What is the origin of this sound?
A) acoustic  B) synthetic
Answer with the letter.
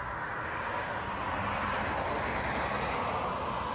A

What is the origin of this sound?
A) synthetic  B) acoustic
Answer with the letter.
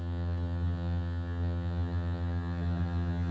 A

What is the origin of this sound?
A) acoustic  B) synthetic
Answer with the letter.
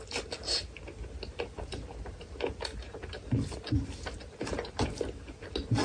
A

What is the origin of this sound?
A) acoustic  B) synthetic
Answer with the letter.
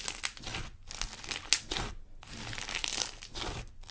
A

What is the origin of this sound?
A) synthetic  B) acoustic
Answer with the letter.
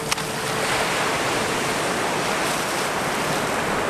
B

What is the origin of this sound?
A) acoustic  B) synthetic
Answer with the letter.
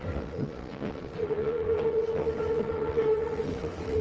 B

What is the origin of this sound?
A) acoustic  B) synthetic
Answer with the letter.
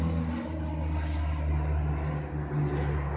A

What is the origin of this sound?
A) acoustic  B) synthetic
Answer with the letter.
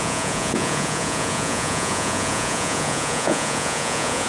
B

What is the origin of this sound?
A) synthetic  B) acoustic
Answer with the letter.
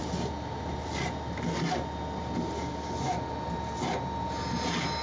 B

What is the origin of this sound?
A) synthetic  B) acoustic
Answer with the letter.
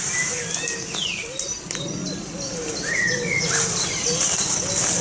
B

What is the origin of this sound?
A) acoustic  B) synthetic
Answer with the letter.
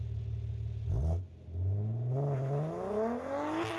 A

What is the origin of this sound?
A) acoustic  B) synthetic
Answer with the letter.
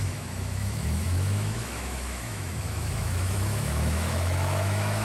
B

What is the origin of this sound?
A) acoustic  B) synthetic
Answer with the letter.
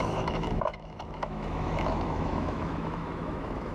B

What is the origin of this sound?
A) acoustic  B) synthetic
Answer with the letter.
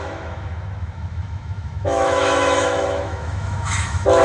B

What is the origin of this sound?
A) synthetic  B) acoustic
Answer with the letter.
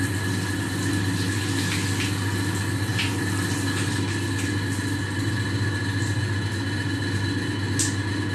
B